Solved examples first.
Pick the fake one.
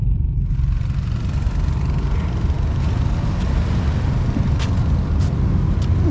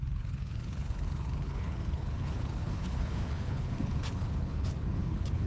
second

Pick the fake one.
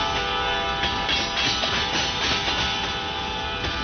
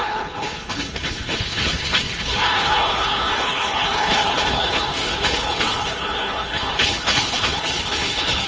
second